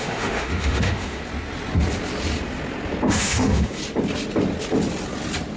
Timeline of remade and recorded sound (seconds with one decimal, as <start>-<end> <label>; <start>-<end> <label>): 0.0-1.2 remade; 1.2-3.1 recorded; 3.1-3.8 remade; 3.8-5.6 recorded